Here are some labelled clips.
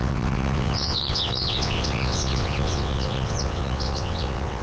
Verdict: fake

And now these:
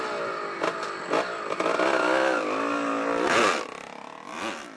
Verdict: real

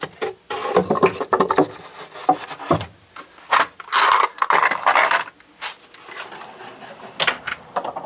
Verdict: real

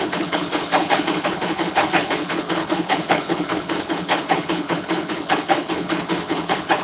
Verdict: fake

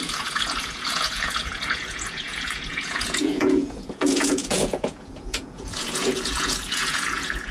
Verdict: fake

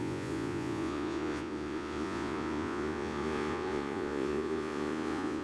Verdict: fake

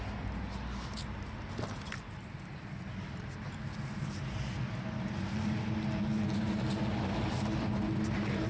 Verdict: real